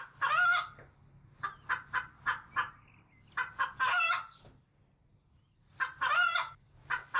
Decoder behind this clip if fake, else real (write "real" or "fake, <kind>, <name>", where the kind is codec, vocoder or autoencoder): real